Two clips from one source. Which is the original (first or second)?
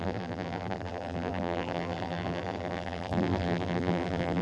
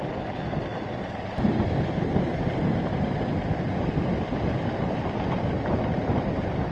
second